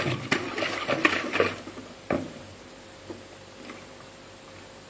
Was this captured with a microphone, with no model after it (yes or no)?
yes